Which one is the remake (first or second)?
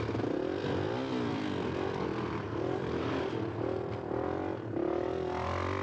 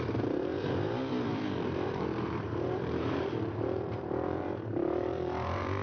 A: second